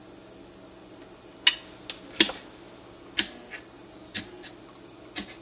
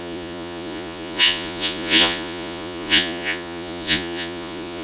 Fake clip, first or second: second